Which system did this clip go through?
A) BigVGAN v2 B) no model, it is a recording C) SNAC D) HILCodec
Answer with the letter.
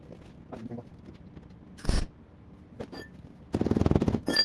B